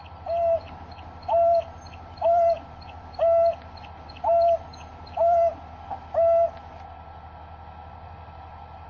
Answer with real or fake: real